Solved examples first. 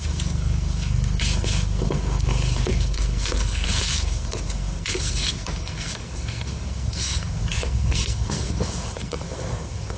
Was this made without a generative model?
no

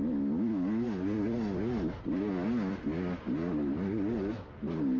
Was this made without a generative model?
yes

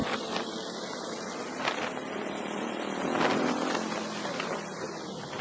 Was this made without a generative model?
yes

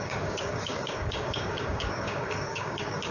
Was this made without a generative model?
no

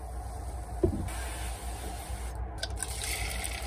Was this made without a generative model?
yes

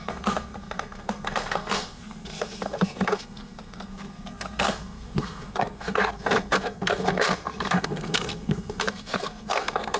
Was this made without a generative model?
no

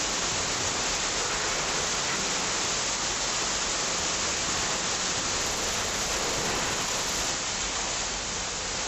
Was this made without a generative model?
yes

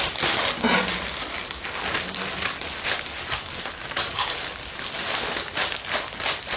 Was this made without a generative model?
yes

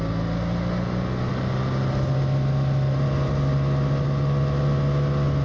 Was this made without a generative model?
yes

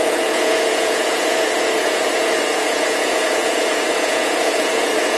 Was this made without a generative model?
no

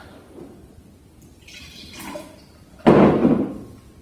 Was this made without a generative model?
yes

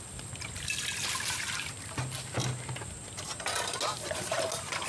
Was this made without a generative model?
yes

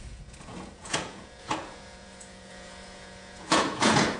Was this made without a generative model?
no